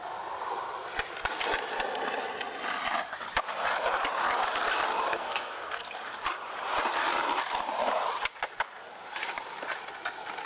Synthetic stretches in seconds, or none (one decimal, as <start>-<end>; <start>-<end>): 5.1-5.9